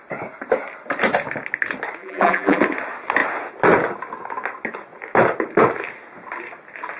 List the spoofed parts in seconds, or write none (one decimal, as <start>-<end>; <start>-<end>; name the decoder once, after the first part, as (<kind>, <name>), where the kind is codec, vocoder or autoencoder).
2.0-2.6 (vocoder, BigVGAN v2)